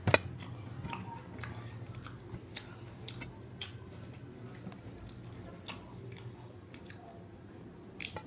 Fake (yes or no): no